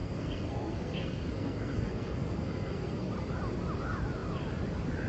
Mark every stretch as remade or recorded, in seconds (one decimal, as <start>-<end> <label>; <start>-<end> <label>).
0.0-3.1 remade; 3.1-5.1 recorded